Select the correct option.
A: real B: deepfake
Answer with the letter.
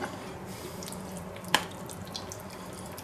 B